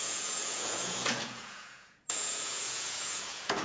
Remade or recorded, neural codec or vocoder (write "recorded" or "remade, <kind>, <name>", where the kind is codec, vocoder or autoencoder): remade, vocoder, Vocos